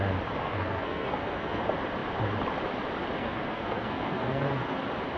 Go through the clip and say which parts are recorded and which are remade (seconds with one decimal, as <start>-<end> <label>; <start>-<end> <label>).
0.0-0.4 recorded; 0.4-1.6 remade; 1.6-3.2 recorded; 3.2-4.8 remade; 4.8-5.2 recorded